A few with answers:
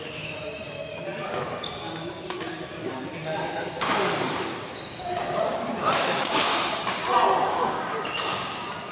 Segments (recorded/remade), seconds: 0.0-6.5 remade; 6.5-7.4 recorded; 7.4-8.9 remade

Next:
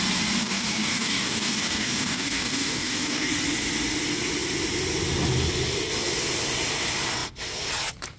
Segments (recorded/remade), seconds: 0.0-0.4 recorded; 0.4-3.3 remade; 3.3-8.2 recorded

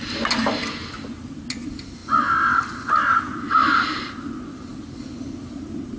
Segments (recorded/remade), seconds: 0.0-6.0 recorded

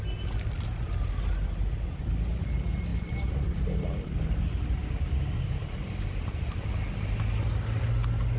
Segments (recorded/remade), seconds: 0.0-4.8 recorded; 4.8-5.5 remade; 5.5-8.4 recorded

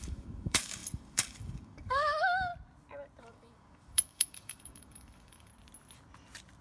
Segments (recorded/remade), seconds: 0.0-2.5 remade; 2.5-3.2 recorded; 3.2-5.5 remade; 5.5-6.6 recorded

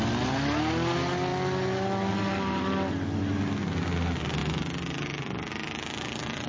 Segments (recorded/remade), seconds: 0.0-6.5 recorded

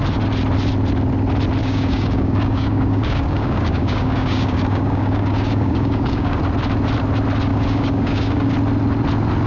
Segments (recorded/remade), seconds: 0.0-1.6 recorded; 1.6-6.4 remade; 6.4-7.5 recorded; 7.5-8.5 remade; 8.5-9.5 recorded

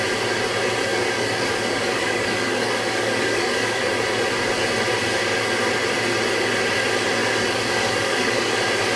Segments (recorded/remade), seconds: 0.0-0.9 recorded; 0.9-3.8 remade; 3.8-7.2 recorded; 7.2-8.6 remade; 8.6-9.0 recorded